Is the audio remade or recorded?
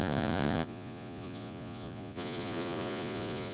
remade